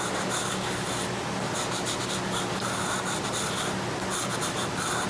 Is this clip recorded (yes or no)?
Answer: yes